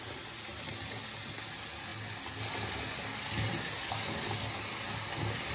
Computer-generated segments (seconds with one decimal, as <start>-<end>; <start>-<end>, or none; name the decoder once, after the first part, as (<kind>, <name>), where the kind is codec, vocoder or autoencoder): none